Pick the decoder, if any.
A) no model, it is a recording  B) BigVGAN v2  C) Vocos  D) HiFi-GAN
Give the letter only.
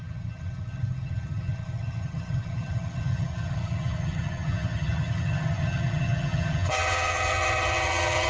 D